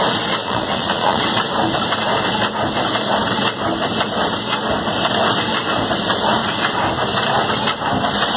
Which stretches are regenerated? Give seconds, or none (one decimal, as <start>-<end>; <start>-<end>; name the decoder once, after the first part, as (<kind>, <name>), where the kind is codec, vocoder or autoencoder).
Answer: 0.4-1.2 (vocoder, Vocos)